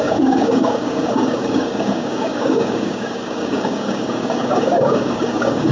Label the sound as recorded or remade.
remade